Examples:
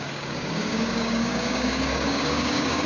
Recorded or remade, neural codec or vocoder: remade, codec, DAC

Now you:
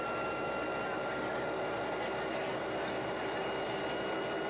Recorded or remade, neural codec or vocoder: recorded